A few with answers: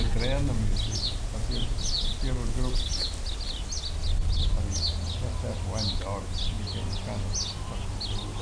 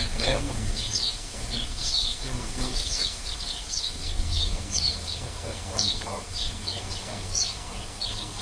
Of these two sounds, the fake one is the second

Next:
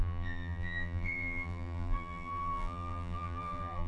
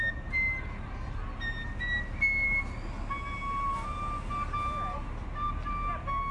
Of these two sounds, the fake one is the first